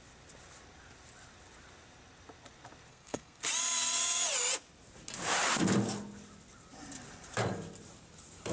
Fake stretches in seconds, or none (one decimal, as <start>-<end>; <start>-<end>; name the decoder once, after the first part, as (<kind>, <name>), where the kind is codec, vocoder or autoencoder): 2.9-3.4 (codec, SNAC)